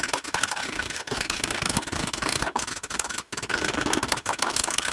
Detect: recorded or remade remade